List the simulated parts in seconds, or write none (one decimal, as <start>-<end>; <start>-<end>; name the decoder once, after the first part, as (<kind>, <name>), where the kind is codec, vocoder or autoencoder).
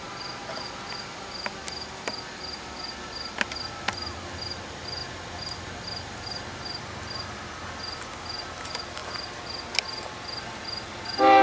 none